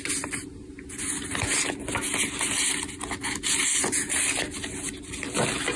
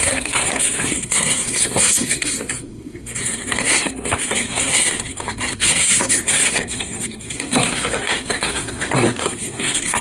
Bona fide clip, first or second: first